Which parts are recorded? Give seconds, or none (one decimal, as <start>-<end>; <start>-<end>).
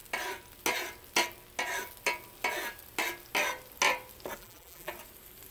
0.0-4.4; 4.9-5.5